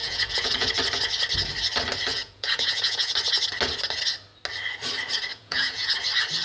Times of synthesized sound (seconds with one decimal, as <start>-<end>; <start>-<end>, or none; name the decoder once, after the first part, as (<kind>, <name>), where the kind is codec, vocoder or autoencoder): 0.0-0.7 (vocoder, Vocos); 2.1-3.2; 5.3-5.9